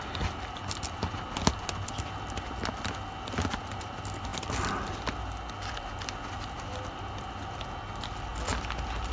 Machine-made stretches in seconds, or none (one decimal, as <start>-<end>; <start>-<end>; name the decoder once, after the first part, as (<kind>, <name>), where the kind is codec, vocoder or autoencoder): 4.3-4.9 (vocoder, BigVGAN v2)